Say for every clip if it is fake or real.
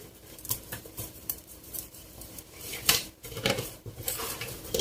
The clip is fake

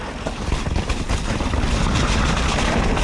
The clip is real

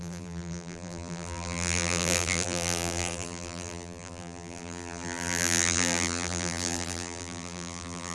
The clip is fake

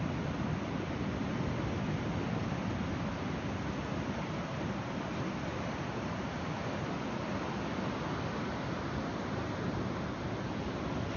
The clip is real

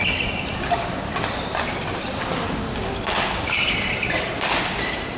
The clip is fake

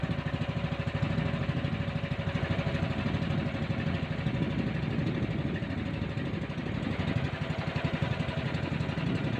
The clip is real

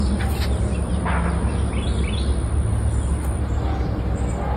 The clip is real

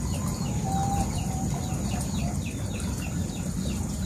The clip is real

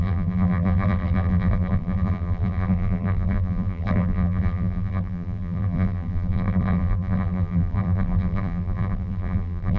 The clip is fake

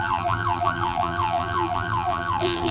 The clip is fake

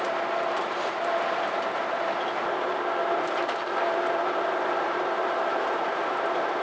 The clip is fake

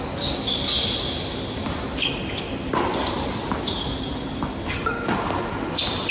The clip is real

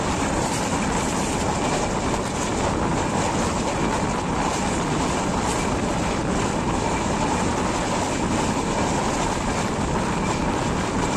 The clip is fake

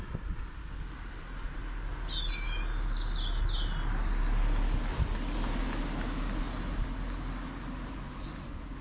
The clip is real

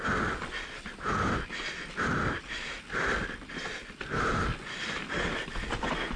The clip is real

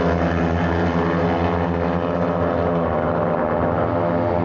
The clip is real